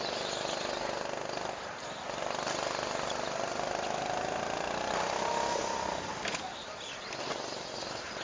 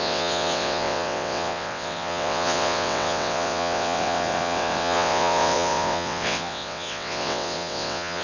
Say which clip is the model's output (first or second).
second